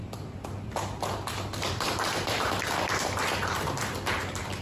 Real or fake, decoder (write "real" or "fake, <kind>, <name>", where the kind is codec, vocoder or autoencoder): fake, vocoder, BigVGAN v2